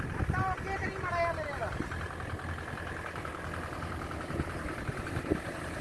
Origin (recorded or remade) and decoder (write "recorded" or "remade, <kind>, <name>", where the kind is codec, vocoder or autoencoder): recorded